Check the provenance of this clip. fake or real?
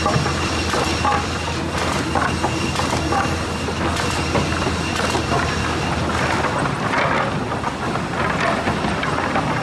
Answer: real